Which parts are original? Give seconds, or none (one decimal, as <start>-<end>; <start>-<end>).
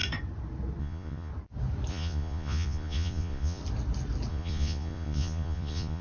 0.0-0.8; 1.3-1.9; 3.6-4.3